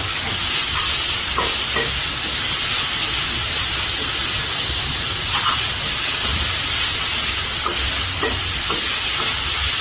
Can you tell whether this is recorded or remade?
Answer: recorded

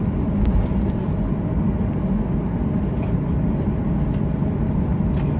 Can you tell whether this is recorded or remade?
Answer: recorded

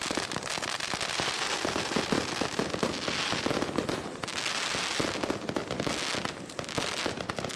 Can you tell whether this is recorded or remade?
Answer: recorded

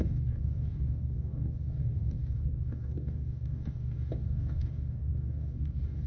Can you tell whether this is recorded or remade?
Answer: remade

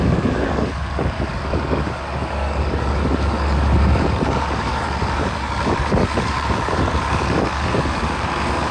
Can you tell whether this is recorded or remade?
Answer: remade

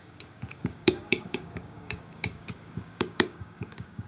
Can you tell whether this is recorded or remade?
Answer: remade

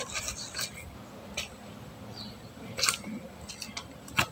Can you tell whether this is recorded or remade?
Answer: recorded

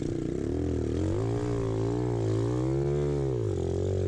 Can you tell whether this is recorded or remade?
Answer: recorded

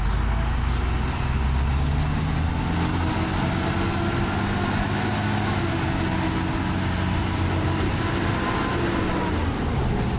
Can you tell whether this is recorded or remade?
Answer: recorded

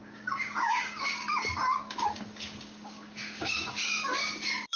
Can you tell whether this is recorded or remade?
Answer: remade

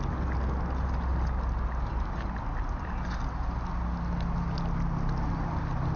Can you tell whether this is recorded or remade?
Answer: recorded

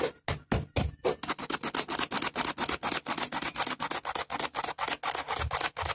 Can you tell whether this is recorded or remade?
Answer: recorded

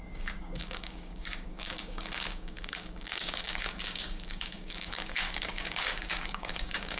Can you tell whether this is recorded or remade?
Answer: remade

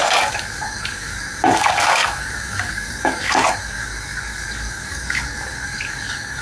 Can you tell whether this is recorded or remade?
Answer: remade